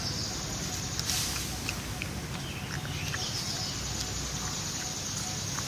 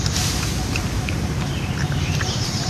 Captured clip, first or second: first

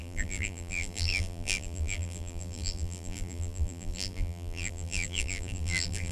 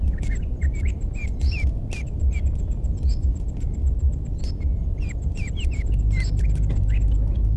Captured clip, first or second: second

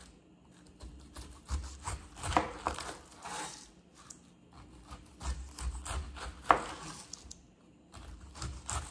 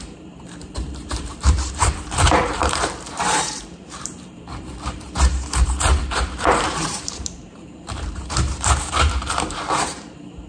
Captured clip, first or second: first